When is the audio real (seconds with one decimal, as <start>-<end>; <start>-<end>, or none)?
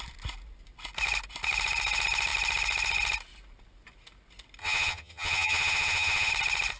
0.0-4.6; 6.3-6.8